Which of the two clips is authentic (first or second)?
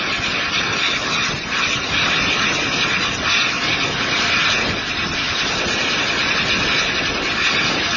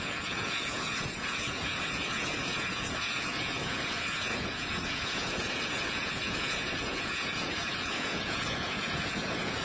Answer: first